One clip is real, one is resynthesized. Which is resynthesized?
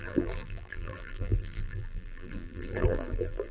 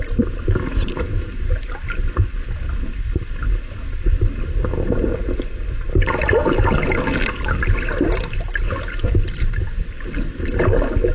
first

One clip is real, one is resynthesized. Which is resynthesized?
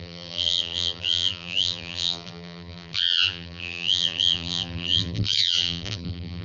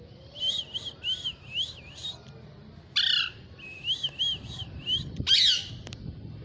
first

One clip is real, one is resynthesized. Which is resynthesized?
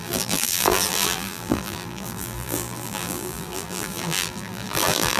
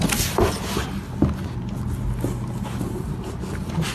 first